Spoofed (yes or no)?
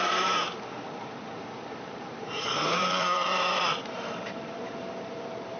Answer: yes